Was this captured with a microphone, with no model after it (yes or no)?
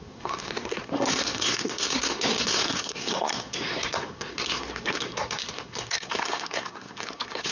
no